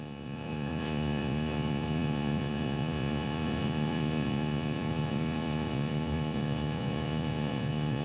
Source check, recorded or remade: remade